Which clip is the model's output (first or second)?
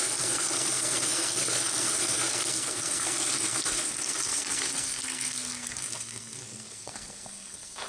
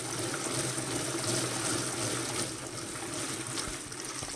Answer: first